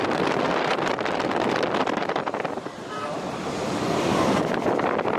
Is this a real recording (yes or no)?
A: no